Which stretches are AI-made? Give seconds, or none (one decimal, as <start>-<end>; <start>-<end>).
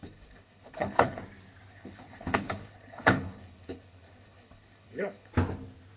0.0-1.2; 1.7-5.3